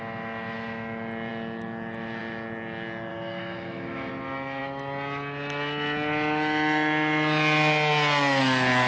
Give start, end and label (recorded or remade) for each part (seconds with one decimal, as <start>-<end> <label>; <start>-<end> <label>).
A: 0.0-3.1 recorded; 3.1-4.1 remade; 4.1-8.9 recorded